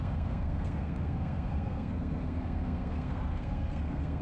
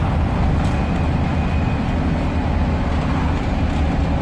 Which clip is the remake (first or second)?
first